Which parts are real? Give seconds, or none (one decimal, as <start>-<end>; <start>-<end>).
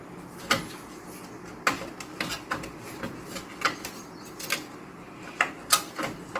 0.0-6.4